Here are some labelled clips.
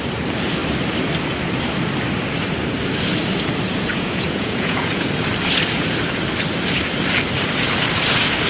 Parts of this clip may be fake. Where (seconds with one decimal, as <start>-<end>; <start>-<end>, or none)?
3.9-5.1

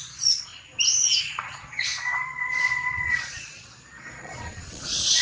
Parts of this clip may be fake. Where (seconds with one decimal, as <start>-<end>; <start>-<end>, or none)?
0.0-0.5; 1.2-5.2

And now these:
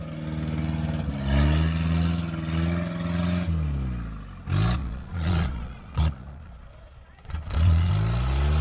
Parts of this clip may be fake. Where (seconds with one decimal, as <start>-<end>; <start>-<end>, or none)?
4.8-7.9

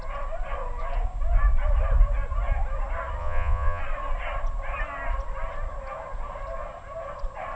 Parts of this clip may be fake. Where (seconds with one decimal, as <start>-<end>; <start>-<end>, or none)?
3.2-3.8